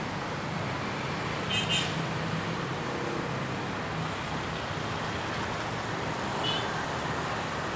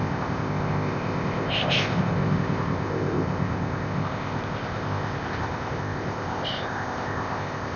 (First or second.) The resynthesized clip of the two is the second